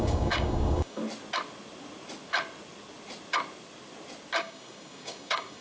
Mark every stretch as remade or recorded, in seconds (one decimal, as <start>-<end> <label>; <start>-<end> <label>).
0.0-1.0 remade; 1.0-4.4 recorded; 4.4-5.6 remade